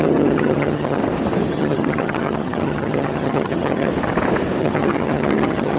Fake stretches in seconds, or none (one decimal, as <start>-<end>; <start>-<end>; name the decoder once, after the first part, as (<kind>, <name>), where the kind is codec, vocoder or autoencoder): 0.0-1.0 (vocoder, HiFi-GAN); 1.5-3.9; 4.6-5.8